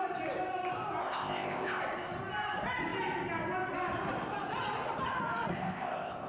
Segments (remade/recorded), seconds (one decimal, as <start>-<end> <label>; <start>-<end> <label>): 0.0-1.0 recorded; 1.0-1.8 remade; 1.8-5.5 recorded; 5.5-6.3 remade